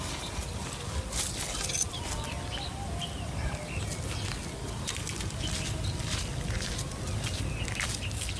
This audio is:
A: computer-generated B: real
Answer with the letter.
B